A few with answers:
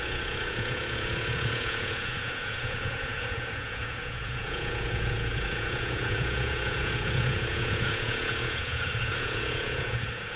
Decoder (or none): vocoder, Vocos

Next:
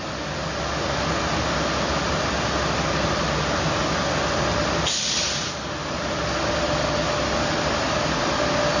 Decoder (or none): none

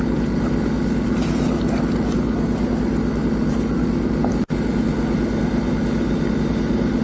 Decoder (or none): none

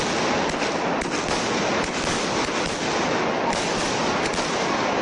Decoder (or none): none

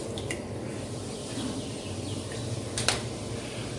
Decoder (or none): none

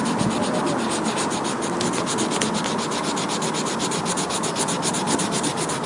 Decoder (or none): none